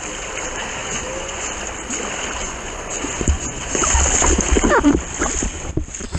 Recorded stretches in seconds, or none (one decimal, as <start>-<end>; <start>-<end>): 0.0-0.8; 1.5-2.4; 3.6-6.2